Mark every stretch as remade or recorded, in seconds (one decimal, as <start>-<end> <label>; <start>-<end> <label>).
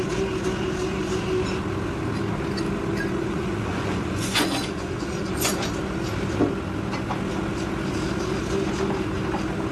0.0-3.2 recorded; 3.2-5.7 remade; 5.7-9.7 recorded